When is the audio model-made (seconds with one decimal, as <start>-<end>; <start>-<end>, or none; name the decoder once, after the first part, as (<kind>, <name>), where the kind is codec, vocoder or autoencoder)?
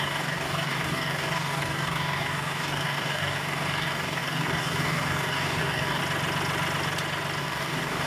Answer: 0.0-6.0 (codec, DAC); 7.4-8.1